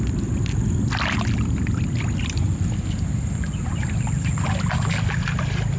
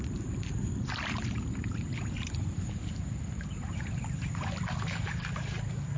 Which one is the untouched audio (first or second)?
first